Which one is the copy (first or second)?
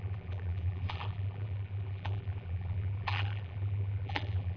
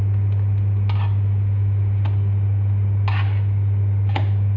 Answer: first